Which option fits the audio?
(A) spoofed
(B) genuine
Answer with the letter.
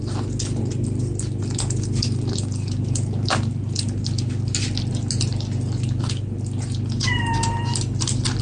B